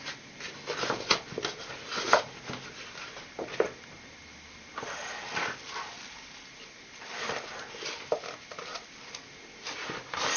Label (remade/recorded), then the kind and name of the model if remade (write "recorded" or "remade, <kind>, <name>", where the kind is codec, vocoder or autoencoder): recorded